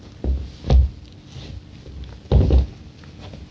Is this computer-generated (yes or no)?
no